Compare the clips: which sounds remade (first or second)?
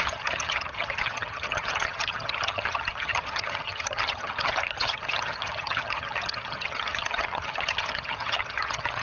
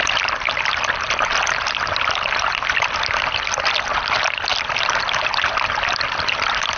first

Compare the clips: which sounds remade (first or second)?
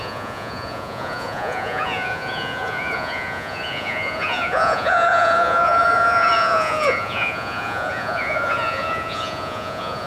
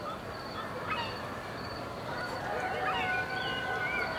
first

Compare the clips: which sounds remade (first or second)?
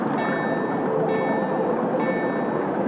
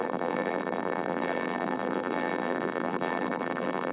second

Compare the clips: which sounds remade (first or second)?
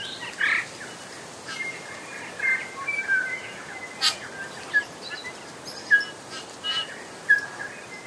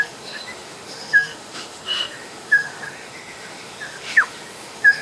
second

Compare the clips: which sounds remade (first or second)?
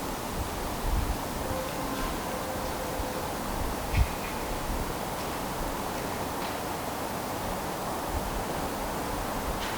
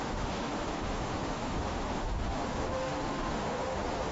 second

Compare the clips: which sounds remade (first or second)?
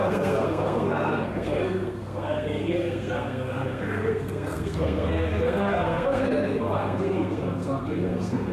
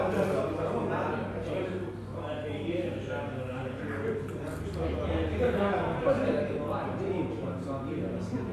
first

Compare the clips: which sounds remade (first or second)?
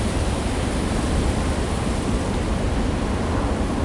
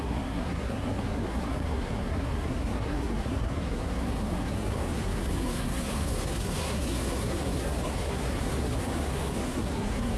second